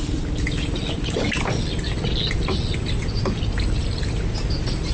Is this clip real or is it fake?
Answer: real